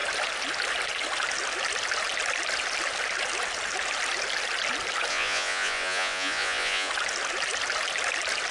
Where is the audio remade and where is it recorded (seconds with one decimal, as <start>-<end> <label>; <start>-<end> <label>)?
0.0-5.1 recorded; 5.1-6.9 remade; 6.9-8.5 recorded